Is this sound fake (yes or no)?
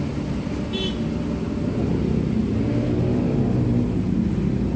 no